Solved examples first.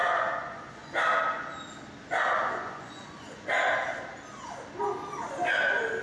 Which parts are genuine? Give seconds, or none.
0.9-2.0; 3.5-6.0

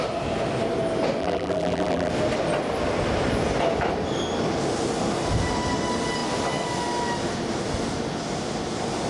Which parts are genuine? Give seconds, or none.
0.0-1.2; 2.1-9.1

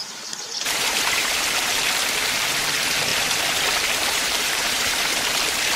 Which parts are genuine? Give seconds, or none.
1.3-3.1; 3.6-4.0; 5.2-5.8

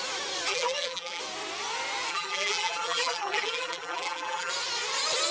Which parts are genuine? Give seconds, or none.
0.0-0.5; 1.2-2.1; 4.5-5.3

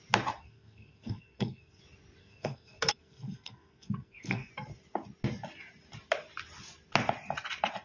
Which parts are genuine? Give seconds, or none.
0.0-0.4; 1.8-2.2; 4.5-7.8

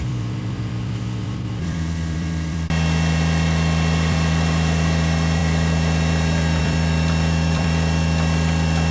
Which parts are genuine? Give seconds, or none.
none

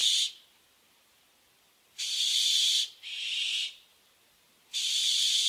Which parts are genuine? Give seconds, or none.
0.0-5.5

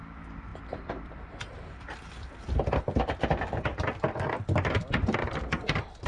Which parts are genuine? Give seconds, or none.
0.0-0.5; 2.8-3.7